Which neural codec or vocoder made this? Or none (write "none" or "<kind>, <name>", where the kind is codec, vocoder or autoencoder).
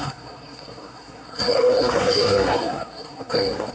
codec, SNAC